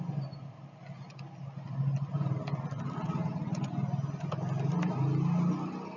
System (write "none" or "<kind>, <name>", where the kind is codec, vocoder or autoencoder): none